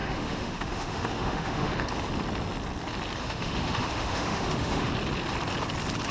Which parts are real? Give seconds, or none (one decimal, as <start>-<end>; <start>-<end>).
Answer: 1.7-3.2; 4.9-6.1